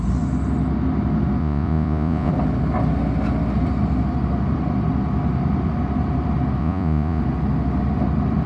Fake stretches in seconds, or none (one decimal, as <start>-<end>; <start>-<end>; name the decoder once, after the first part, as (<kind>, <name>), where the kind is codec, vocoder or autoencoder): 1.4-2.3 (vocoder, Vocos); 6.6-7.2